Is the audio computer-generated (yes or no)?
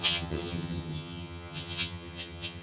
yes